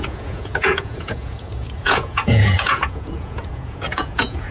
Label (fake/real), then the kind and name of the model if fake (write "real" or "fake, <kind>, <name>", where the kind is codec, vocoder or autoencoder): fake, vocoder, Vocos